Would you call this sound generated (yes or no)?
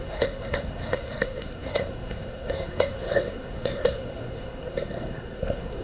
yes